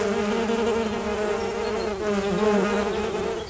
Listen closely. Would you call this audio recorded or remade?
recorded